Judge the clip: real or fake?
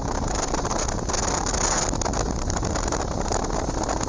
real